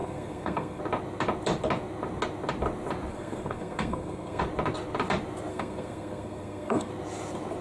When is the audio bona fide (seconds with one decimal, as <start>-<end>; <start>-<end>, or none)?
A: 0.8-3.1; 4.4-5.5; 6.9-7.6